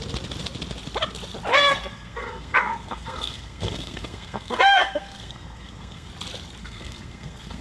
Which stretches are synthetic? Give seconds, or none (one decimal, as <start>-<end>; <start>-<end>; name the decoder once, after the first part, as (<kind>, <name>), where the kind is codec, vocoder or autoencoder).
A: 1.5-6.1 (codec, SNAC); 6.6-7.6